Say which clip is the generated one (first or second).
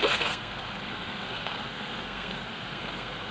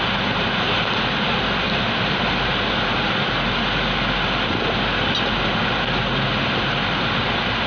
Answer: first